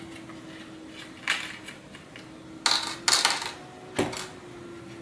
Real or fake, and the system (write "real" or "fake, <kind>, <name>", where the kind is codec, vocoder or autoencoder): real